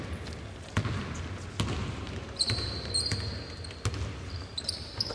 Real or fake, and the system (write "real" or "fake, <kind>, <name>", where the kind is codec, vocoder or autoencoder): real